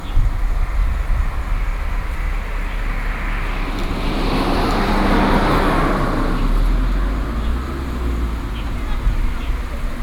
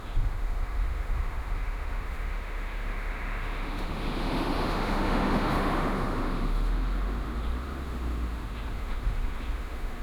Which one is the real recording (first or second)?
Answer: first